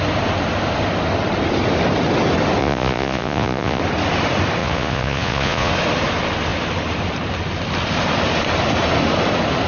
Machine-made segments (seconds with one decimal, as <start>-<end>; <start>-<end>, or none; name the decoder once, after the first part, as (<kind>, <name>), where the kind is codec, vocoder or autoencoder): 2.6-3.8 (vocoder, Vocos); 4.6-5.7